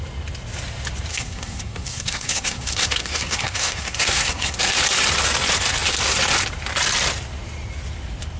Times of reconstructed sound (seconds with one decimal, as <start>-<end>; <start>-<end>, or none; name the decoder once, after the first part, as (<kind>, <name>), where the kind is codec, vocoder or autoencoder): 1.1-4.6 (codec, SNAC)